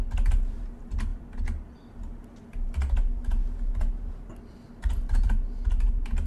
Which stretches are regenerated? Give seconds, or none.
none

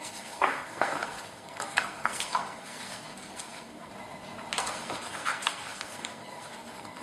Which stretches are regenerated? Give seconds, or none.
0.0-3.9 (codec, SNAC); 4.6-7.0

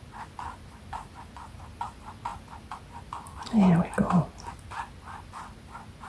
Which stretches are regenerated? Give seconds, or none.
none

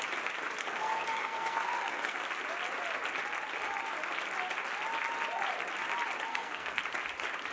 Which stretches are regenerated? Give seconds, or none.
0.6-2.2 (codec, SNAC); 6.3-6.8